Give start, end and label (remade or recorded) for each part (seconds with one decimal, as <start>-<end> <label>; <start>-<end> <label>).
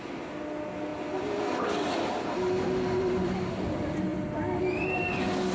0.0-5.5 recorded